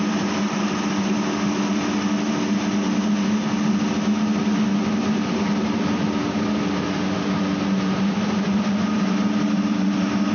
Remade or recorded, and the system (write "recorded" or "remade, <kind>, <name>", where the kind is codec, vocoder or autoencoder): recorded